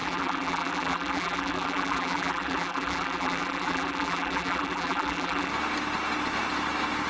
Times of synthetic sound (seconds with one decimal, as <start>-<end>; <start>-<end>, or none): 0.0-5.5

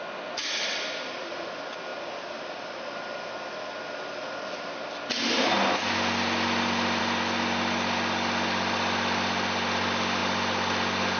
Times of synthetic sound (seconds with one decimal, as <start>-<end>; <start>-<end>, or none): none

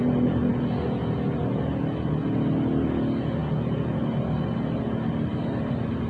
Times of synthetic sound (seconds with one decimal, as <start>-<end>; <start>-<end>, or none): none

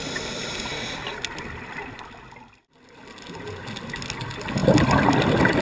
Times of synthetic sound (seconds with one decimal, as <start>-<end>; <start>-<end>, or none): none

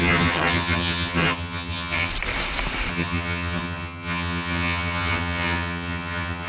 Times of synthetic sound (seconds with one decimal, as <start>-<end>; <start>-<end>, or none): 0.0-2.1; 2.9-6.5